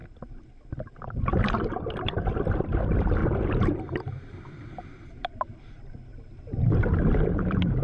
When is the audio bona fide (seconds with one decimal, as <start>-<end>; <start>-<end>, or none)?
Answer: 0.0-3.2; 5.2-6.1; 6.9-7.8